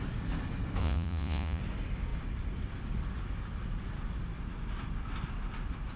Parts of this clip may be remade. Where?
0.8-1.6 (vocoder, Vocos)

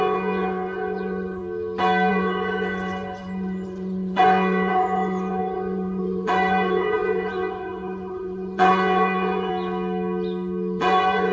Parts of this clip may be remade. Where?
0.0-1.4 (vocoder, Vocos); 2.1-9.5; 10.8-11.3

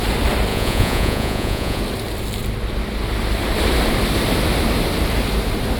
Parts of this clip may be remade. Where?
0.5-1.8 (vocoder, Vocos)

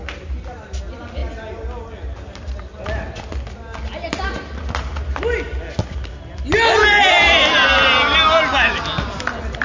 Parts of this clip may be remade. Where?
none

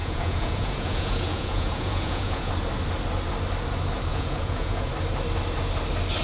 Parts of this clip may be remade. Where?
0.0-2.5 (vocoder, Vocos); 4.1-4.9

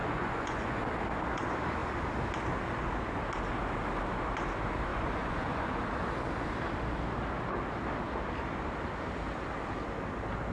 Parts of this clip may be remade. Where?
0.0-0.8 (vocoder, Vocos); 4.9-5.8